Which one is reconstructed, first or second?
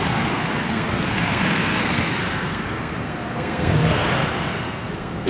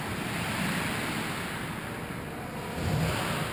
first